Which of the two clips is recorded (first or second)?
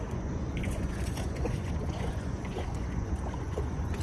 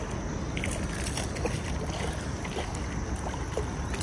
second